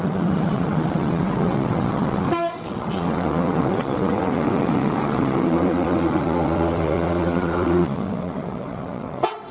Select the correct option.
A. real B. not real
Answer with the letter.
B